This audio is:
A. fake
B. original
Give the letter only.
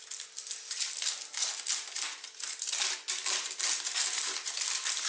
B